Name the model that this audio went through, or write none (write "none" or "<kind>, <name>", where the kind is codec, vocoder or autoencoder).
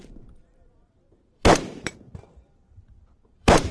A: vocoder, BigVGAN v2